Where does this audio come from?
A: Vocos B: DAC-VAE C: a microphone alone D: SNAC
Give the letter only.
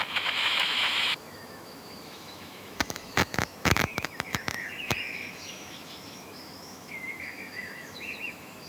B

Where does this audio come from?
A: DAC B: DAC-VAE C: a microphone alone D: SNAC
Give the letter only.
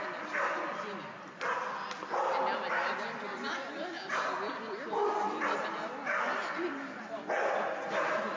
C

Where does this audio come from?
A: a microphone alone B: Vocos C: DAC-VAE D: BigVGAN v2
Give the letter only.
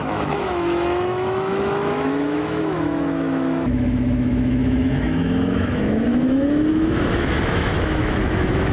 C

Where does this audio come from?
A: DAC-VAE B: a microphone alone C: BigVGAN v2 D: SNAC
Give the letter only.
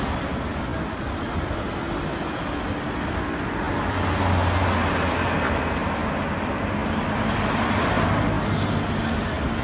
B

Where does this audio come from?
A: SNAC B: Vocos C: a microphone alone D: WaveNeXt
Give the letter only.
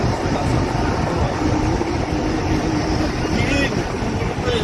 C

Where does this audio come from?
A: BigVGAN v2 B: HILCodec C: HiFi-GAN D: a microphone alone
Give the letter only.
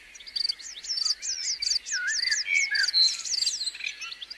D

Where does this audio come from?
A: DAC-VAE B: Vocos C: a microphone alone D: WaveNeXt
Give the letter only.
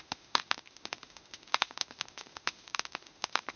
A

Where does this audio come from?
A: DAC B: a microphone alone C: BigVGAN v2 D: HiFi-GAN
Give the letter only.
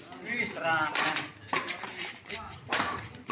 C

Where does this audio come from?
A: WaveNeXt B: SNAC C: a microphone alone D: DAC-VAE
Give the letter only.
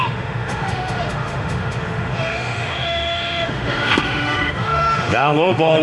D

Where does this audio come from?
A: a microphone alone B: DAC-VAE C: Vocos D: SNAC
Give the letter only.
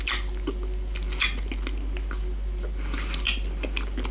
A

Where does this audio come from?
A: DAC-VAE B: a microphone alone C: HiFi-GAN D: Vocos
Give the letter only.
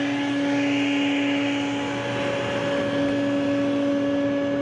B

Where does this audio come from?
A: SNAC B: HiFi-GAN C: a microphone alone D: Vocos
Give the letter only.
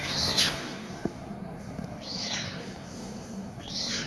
A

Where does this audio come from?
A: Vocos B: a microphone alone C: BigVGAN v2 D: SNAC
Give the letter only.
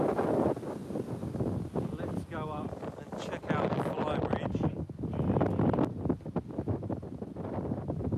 B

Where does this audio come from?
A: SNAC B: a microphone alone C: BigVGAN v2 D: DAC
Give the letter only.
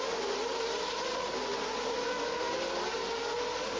B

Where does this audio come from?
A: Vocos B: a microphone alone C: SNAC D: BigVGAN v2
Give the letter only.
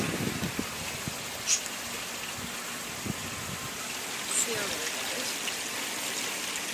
B